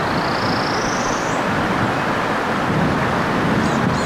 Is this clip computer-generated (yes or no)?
no